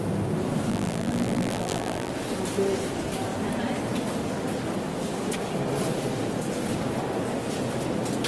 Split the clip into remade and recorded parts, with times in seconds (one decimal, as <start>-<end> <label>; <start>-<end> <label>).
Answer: 0.0-0.7 recorded; 0.7-2.1 remade; 2.1-8.3 recorded